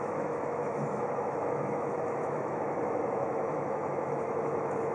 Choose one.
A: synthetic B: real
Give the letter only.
A